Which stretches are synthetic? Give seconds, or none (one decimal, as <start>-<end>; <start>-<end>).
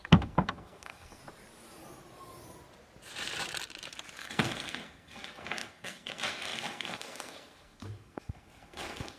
0.0-1.2; 4.2-9.2